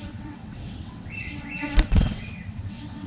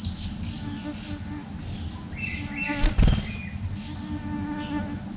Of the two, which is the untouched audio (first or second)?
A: second